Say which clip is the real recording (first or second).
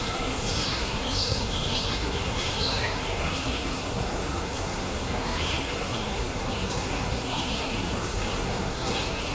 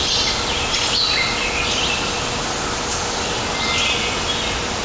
second